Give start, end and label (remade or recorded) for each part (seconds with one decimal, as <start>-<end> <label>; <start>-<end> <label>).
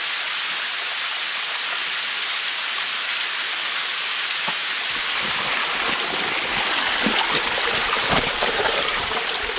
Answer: 0.0-7.8 recorded; 7.8-9.1 remade; 9.1-9.6 recorded